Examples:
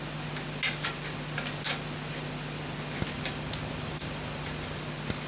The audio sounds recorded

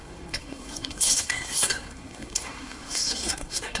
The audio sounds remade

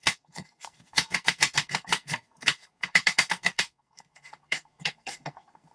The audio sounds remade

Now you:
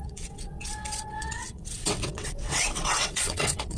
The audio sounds remade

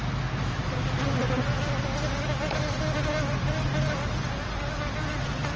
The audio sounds recorded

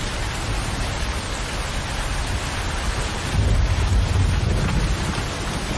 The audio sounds recorded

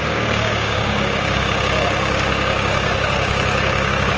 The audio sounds remade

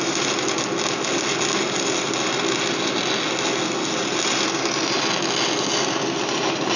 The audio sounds recorded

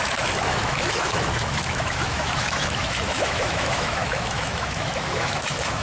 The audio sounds remade